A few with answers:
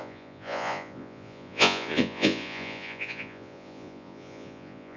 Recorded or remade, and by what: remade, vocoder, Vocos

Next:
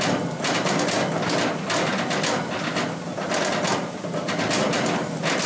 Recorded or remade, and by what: recorded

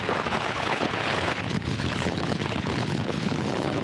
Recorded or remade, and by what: remade, codec, HILCodec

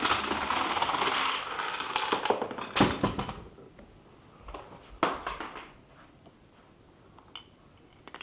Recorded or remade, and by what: recorded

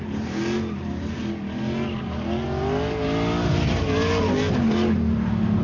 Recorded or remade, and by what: recorded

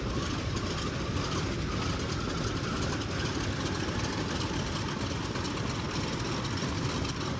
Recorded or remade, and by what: recorded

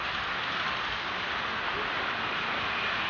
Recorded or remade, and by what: recorded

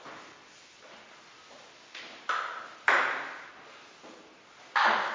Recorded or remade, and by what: recorded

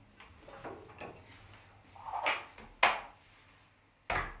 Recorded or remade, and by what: recorded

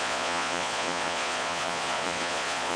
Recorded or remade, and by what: remade, vocoder, Vocos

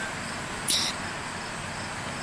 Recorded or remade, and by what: recorded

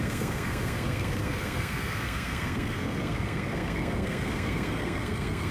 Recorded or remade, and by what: remade, codec, SNAC